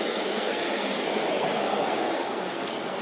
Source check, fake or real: fake